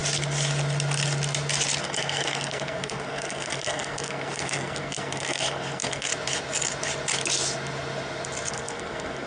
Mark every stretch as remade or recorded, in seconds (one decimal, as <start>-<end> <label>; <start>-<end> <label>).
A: 0.0-1.8 recorded; 1.8-6.1 remade; 6.1-8.5 recorded; 8.5-9.3 remade